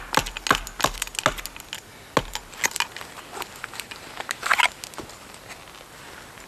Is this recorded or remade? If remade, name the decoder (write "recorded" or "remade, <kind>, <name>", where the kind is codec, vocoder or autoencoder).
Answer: recorded